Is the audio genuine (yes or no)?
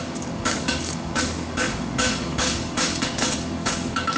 no